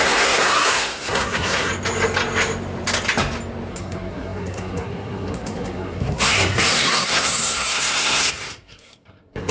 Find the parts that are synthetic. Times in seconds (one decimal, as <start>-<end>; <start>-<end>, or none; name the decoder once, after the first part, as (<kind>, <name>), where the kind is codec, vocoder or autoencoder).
0.0-1.7 (codec, SNAC); 3.7-9.5